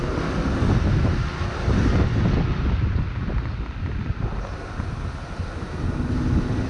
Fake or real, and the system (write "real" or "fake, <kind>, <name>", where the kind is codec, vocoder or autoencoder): real